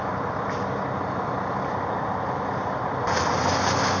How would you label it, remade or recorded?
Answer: recorded